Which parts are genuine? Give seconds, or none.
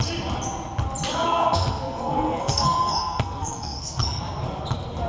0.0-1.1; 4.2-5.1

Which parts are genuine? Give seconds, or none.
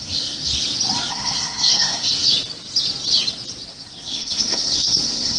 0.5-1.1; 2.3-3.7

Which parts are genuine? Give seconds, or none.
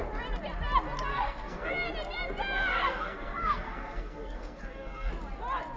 0.0-1.1; 1.7-2.7; 5.1-5.8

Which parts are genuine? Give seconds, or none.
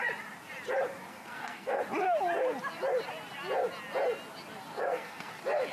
0.0-1.1; 1.8-4.7; 5.3-5.7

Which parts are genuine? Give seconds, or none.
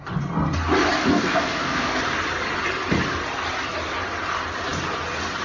0.0-1.0; 2.0-5.4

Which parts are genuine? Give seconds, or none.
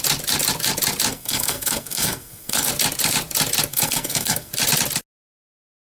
0.0-1.1; 2.7-3.7; 4.5-5.9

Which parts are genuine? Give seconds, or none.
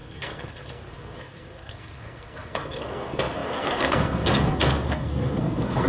none